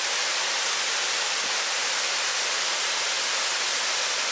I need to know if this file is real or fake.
real